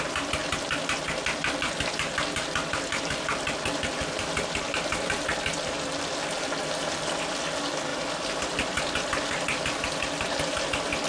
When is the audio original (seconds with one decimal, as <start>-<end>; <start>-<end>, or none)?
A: 0.0-11.1